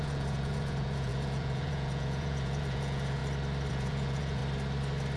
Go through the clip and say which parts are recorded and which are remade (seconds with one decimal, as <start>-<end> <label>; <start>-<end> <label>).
0.0-3.2 remade; 3.2-3.7 recorded; 3.7-4.4 remade; 4.4-5.2 recorded